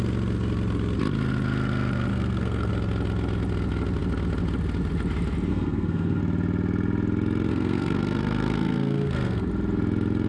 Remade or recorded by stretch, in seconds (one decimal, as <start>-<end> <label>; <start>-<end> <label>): 0.0-2.1 recorded; 2.1-2.7 remade; 2.7-5.5 recorded; 5.5-6.2 remade; 6.2-7.5 recorded; 7.5-9.5 remade; 9.5-10.3 recorded